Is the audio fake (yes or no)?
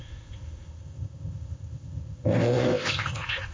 yes